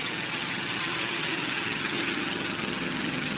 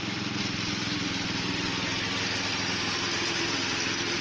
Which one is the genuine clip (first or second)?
second